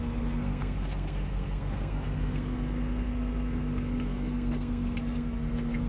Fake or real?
fake